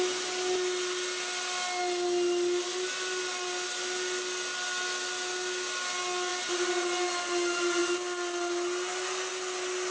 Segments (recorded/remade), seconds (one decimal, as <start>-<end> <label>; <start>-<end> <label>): 0.0-9.9 recorded